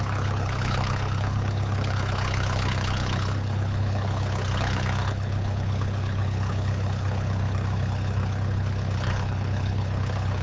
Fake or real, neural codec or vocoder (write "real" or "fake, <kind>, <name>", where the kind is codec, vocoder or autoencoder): fake, codec, HILCodec